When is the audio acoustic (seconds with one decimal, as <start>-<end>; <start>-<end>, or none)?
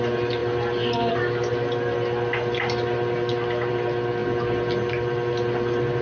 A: 0.0-6.0